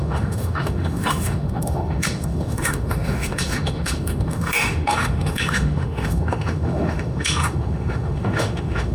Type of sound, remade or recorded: remade